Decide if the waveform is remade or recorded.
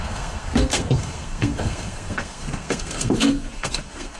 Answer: remade